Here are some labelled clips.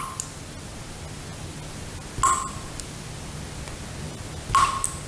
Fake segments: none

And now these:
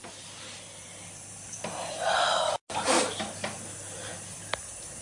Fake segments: none

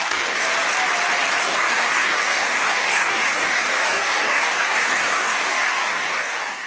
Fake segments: 0.0-0.5 (codec, DAC); 1.4-6.7

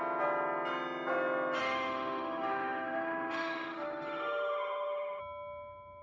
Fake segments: 1.6-5.2 (autoencoder, DAC-VAE)

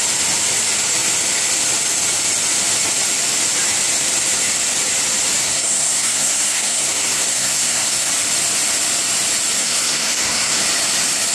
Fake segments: 5.4-8.1 (codec, SNAC); 9.6-10.6